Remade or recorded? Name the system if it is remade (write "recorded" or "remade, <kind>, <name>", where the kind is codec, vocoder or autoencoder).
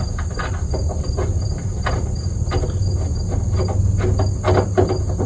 recorded